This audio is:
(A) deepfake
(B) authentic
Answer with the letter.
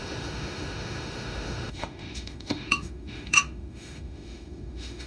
A